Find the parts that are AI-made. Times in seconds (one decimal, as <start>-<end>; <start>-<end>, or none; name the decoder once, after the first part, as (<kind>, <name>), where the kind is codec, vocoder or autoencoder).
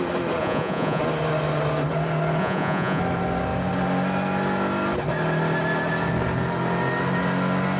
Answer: 0.4-1.0 (vocoder, Vocos); 2.4-3.0